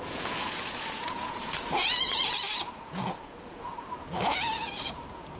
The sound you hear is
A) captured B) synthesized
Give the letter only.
B